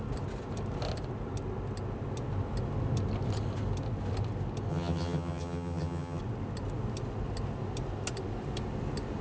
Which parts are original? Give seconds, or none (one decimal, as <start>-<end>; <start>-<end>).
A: 0.0-4.7; 6.2-9.2